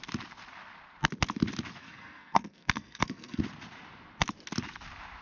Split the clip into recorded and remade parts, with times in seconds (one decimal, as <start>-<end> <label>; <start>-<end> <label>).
0.0-1.8 recorded; 1.8-3.4 remade; 3.4-5.2 recorded

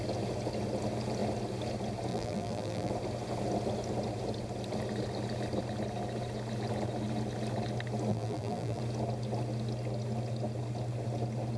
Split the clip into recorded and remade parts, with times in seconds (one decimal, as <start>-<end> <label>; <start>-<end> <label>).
0.0-2.1 recorded; 2.1-2.9 remade; 2.9-8.1 recorded; 8.1-8.8 remade; 8.8-11.6 recorded

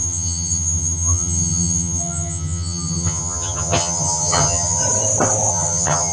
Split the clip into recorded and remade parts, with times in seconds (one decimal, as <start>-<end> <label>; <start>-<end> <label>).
0.0-4.8 remade; 4.8-5.5 recorded; 5.5-6.1 remade